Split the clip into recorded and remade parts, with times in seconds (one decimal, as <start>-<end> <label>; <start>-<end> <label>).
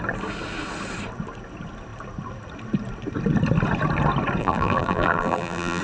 0.0-4.4 recorded; 4.4-5.8 remade